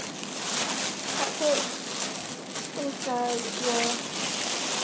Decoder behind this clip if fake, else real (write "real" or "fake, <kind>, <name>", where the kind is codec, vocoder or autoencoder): real